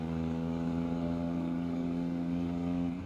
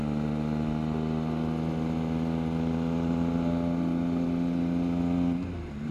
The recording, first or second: second